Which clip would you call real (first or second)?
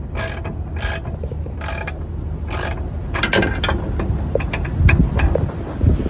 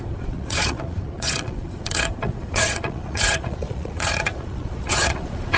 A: first